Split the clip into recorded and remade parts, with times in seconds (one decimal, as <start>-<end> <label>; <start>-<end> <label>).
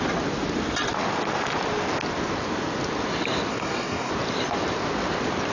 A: 0.0-3.5 recorded; 3.5-4.1 remade; 4.1-5.5 recorded